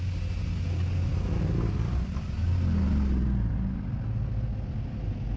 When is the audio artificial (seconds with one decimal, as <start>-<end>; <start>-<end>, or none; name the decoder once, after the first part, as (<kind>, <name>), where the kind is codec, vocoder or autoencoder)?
none